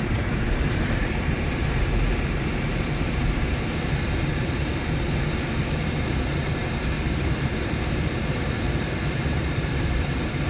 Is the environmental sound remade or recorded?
remade